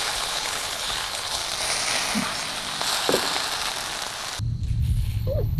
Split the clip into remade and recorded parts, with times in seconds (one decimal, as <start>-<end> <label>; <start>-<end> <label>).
0.0-1.4 remade; 1.4-4.8 recorded; 4.8-5.6 remade